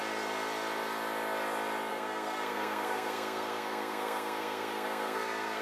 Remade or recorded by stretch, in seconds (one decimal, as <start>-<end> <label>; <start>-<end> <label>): 0.0-1.9 recorded; 1.9-5.6 remade